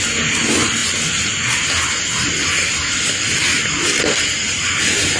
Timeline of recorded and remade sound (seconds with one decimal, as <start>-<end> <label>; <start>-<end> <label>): 0.0-5.2 recorded